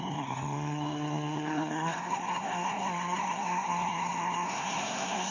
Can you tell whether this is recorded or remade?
remade